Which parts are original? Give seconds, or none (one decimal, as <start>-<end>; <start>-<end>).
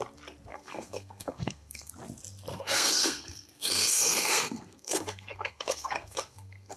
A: 0.0-0.5; 1.9-2.5